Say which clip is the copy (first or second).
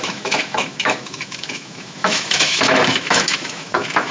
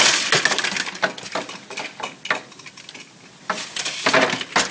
first